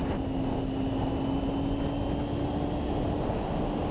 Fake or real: real